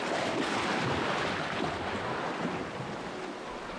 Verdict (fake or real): real